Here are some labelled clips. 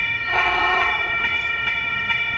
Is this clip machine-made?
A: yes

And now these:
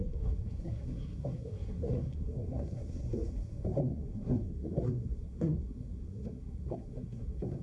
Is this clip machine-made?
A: yes